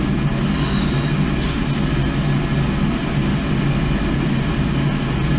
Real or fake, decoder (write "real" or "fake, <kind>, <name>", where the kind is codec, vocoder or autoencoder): real